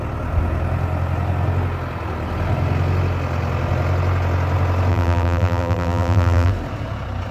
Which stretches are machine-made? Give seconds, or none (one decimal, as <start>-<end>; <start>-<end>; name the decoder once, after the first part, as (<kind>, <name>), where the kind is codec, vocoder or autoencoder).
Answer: 4.9-6.5 (vocoder, BigVGAN v2)